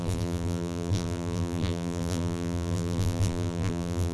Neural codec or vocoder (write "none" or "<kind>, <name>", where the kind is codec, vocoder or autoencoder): vocoder, BigVGAN v2